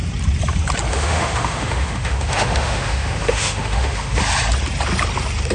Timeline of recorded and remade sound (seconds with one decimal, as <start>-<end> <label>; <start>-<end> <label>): 0.0-0.9 recorded; 0.9-4.2 remade; 4.2-5.5 recorded

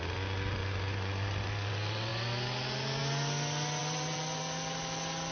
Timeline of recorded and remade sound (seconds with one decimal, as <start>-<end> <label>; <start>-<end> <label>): 0.0-0.6 recorded; 0.6-1.7 remade; 1.7-3.8 recorded; 3.8-4.4 remade; 4.4-5.3 recorded